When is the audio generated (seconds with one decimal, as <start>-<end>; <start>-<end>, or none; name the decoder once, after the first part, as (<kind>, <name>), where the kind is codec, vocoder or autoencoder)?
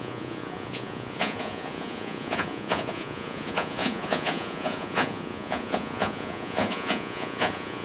0.0-7.8 (vocoder, Vocos)